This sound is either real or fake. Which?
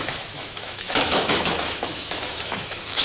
fake